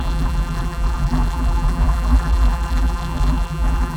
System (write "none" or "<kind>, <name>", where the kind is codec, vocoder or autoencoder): vocoder, BigVGAN v2